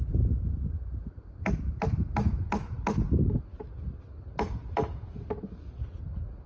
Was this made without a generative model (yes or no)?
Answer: yes